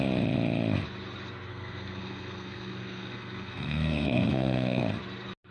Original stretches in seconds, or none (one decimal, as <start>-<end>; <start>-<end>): 0.0-1.5; 4.8-5.5